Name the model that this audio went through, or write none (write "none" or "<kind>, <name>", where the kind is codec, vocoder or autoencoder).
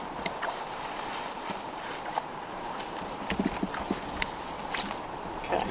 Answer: none